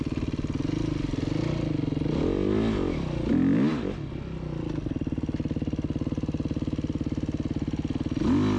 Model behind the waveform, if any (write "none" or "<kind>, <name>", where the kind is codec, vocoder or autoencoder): none